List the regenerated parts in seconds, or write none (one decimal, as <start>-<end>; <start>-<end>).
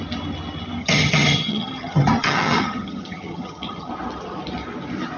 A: 0.8-3.9